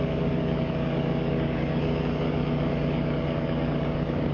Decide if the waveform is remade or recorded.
remade